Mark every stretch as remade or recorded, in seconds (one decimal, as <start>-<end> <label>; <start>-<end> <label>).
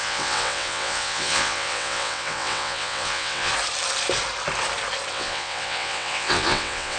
0.0-3.5 remade; 3.5-5.1 recorded; 5.1-7.0 remade